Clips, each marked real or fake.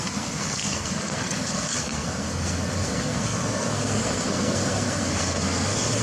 fake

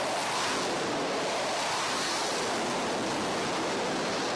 real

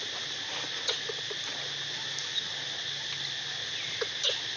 real